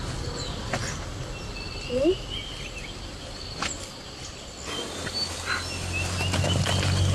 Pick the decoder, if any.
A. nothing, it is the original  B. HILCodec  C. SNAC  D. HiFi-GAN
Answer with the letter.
A